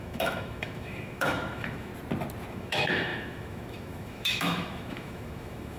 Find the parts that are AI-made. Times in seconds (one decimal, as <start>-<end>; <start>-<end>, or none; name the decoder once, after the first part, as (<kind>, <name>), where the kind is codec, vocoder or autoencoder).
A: 0.0-1.9 (autoencoder, DAC-VAE); 2.5-5.8